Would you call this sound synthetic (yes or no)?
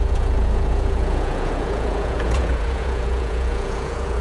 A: yes